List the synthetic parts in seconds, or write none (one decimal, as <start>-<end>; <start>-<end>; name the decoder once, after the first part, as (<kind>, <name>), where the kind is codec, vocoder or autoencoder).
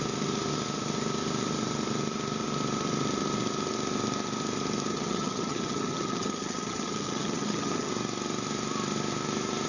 4.9-7.9 (vocoder, HiFi-GAN)